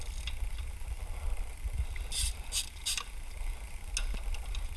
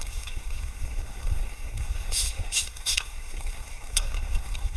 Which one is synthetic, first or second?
second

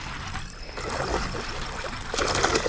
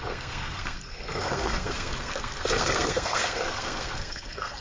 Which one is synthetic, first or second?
second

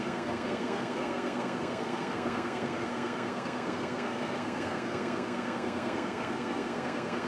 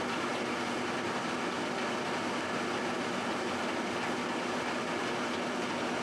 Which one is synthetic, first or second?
first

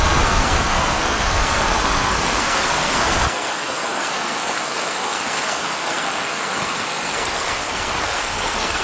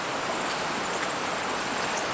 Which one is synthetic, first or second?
first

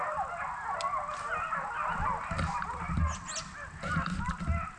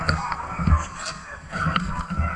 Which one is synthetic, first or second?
second